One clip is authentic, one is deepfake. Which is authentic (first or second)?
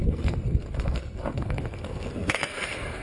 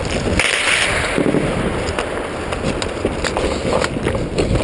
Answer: second